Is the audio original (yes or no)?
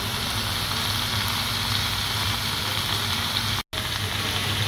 yes